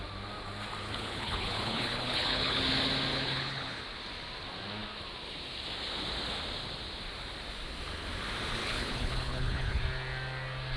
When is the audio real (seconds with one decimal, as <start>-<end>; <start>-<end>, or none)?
0.0-0.8; 2.6-3.1; 3.8-8.6; 9.8-10.8